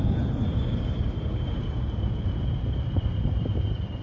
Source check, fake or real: fake